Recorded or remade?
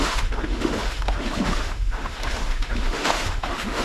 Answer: remade